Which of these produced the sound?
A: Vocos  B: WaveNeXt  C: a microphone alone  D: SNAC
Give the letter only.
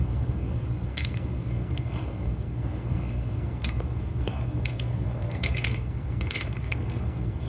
D